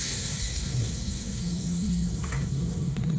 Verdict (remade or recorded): remade